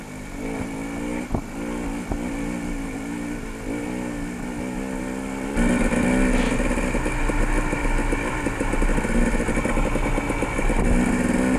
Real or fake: real